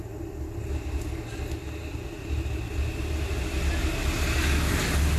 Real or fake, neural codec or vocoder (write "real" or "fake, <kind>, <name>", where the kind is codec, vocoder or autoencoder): real